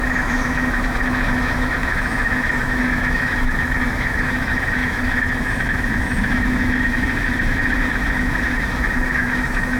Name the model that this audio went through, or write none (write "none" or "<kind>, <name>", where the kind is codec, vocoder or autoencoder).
autoencoder, DAC-VAE